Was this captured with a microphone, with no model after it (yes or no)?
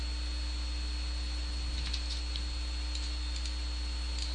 yes